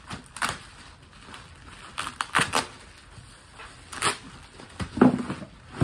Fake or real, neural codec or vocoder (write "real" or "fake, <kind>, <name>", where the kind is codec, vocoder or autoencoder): real